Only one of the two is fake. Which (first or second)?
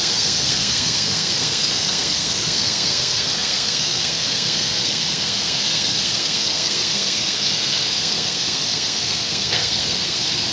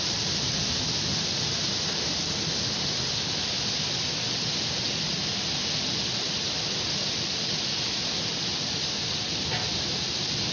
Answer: first